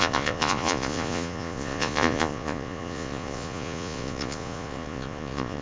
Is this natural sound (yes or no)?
no